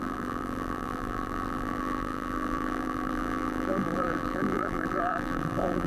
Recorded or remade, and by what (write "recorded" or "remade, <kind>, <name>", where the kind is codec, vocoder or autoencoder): remade, vocoder, BigVGAN v2